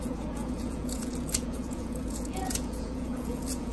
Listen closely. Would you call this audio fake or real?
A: fake